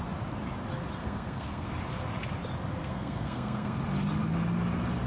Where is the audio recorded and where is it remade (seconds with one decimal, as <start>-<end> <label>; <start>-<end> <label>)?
0.0-1.0 recorded; 1.0-1.7 remade; 1.7-2.8 recorded; 2.8-3.8 remade; 3.8-5.1 recorded